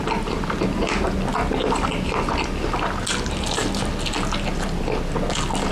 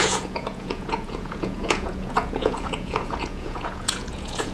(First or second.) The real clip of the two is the first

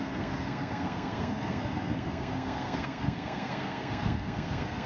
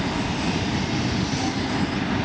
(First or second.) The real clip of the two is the second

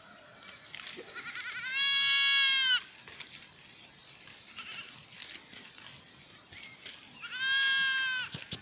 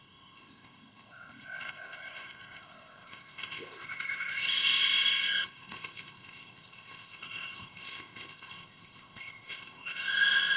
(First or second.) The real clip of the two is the first